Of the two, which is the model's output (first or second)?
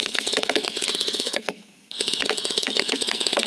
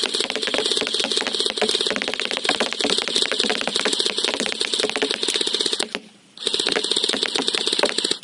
first